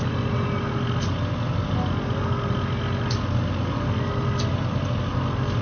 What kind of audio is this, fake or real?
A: real